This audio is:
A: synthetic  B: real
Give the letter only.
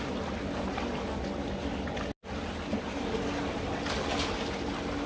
B